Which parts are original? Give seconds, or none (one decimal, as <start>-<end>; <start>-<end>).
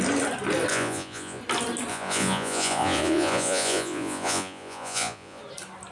0.0-0.7; 1.4-1.9; 5.4-5.9